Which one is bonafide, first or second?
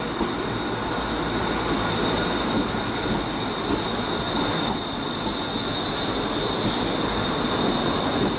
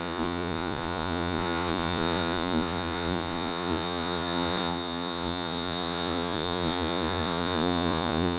first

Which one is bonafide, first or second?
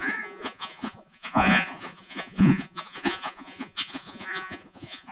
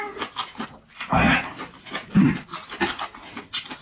second